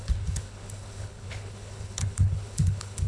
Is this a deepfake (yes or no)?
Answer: yes